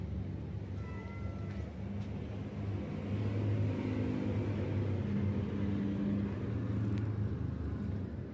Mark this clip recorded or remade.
recorded